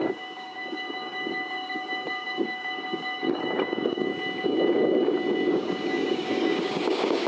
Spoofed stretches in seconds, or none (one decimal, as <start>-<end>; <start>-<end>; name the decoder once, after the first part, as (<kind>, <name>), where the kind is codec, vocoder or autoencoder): 0.0-4.1 (codec, DAC); 5.5-7.3